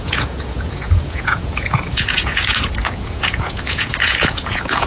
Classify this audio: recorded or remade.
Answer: remade